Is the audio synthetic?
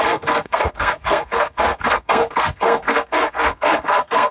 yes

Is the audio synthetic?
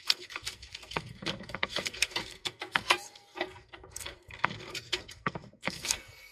yes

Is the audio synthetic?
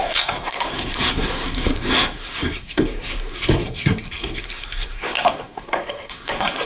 yes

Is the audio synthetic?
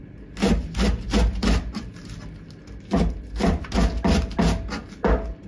no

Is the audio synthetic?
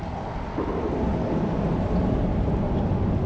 no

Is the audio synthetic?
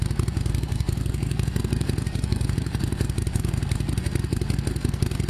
yes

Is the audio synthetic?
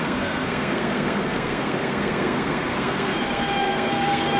yes